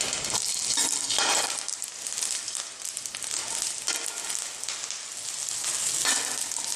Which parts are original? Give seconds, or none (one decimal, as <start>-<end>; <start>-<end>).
0.0-6.8